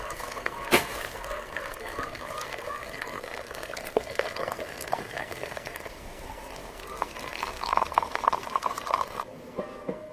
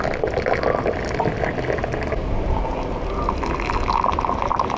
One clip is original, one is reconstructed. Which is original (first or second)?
second